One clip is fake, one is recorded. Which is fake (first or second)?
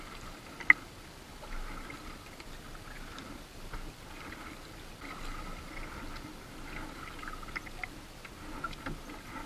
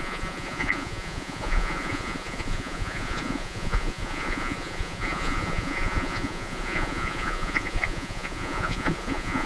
second